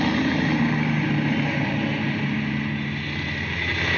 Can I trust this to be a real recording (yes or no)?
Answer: yes